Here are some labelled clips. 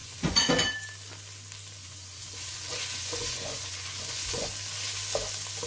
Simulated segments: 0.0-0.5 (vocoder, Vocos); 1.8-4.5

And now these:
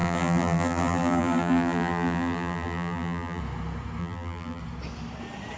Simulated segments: 0.0-3.4 (vocoder, BigVGAN v2); 4.0-4.6

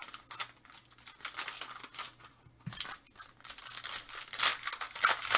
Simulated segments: none

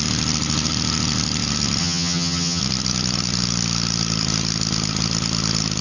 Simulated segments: 1.8-2.6 (vocoder, HiFi-GAN)

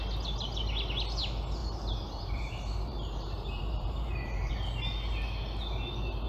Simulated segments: 1.6-4.5 (vocoder, BigVGAN v2)

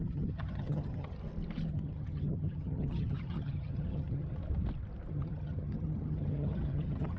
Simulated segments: 0.0-1.2 (vocoder, HiFi-GAN); 1.7-4.4; 5.1-7.2

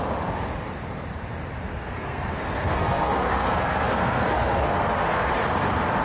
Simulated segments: 1.7-5.3 (codec, SNAC)